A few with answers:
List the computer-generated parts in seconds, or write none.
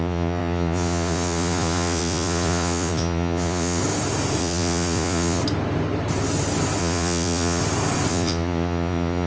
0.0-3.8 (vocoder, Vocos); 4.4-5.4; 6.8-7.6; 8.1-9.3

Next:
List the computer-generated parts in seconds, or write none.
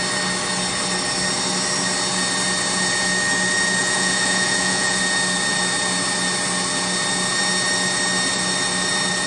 3.8-5.0 (vocoder, Vocos)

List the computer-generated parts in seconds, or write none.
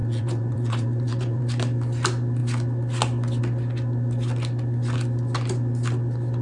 0.0-1.4 (vocoder, Vocos)